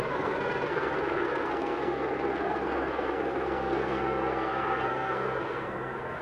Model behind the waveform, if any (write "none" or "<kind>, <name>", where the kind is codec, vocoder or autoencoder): codec, SNAC